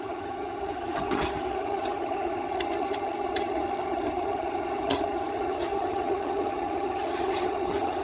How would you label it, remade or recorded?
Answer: remade